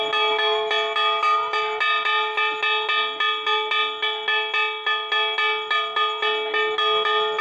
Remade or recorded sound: recorded